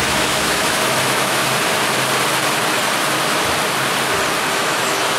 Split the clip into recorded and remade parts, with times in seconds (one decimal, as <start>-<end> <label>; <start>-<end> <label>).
0.0-1.4 remade; 1.4-4.5 recorded; 4.5-5.2 remade